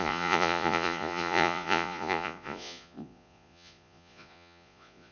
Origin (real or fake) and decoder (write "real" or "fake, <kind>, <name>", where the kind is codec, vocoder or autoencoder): fake, vocoder, Vocos